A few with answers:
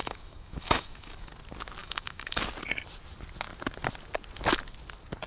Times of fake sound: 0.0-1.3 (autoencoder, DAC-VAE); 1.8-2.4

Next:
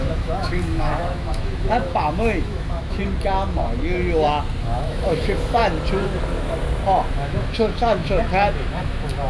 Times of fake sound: 0.0-3.0 (autoencoder, DAC-VAE); 4.6-5.6; 7.1-9.3

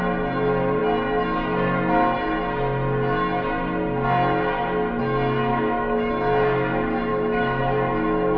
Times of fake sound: 5.5-6.1 (autoencoder, DAC-VAE); 7.1-7.6

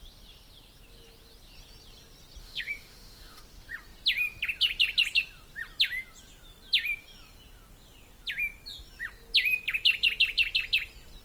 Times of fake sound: 2.4-3.4 (autoencoder, DAC-VAE)

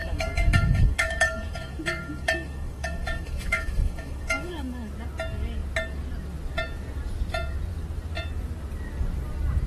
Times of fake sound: 0.0-4.9 (autoencoder, DAC-VAE)